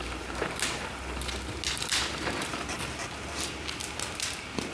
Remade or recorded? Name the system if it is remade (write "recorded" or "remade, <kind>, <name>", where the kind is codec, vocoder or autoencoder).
recorded